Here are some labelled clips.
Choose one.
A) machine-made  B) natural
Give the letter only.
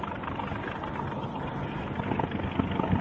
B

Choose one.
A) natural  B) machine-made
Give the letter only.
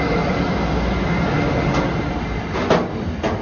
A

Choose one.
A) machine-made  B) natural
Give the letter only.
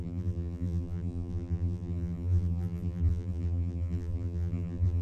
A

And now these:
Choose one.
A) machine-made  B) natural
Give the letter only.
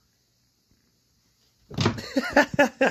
B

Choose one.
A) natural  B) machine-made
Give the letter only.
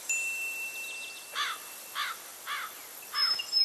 A